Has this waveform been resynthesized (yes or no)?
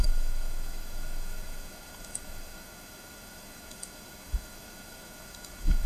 yes